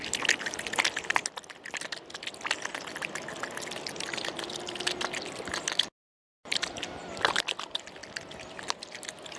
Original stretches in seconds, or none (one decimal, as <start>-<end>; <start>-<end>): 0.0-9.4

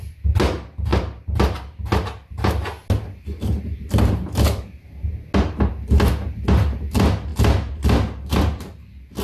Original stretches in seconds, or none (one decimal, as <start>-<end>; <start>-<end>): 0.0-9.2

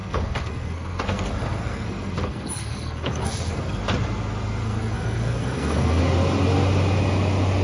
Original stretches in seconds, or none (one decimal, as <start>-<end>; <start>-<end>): 3.8-4.6; 6.0-7.6

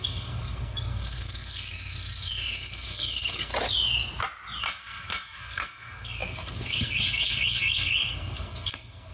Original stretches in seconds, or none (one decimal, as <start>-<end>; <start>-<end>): 3.5-4.6

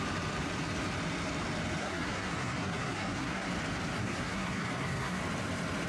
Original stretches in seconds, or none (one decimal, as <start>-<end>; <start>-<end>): 0.0-1.8; 3.5-4.0; 5.2-5.9

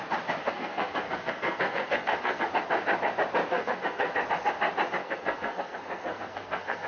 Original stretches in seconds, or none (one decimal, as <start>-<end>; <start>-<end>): 0.0-0.4; 2.5-3.5; 4.2-5.0

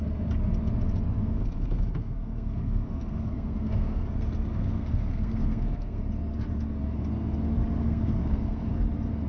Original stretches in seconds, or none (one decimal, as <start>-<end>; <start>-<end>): 0.0-1.2; 6.0-7.8; 8.8-9.3

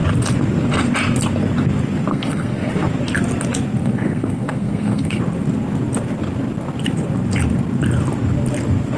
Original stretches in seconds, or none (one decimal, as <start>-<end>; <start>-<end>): 0.0-2.1; 2.7-3.8; 5.2-9.0